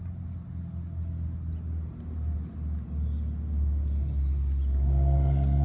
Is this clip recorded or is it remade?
recorded